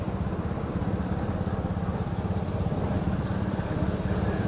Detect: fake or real fake